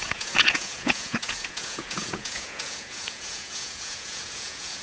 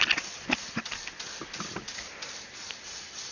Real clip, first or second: second